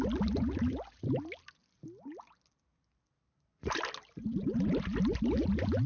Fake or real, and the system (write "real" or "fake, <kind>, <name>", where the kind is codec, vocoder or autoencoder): real